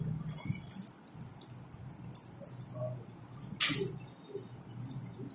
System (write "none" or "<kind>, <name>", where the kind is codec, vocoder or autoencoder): none